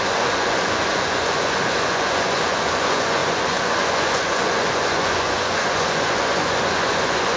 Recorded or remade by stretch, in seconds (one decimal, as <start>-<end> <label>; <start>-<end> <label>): 0.0-7.4 remade